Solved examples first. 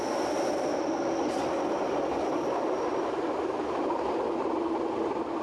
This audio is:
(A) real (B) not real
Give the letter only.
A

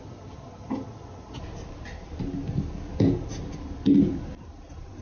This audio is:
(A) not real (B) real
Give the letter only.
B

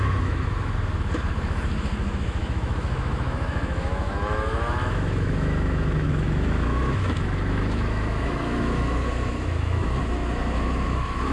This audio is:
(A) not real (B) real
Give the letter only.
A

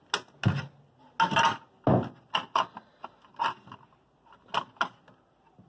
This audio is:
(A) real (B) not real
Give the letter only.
A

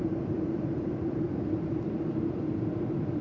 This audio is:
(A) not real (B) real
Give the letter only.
A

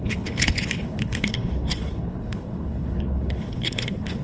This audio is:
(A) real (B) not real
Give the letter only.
B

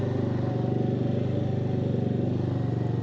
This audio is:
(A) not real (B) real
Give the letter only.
B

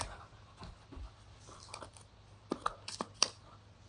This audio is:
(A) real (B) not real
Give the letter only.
A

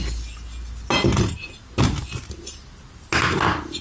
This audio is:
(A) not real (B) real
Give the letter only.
B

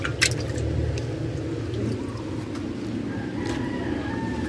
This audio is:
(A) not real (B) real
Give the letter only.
B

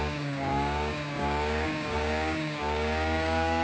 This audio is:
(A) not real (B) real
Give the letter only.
A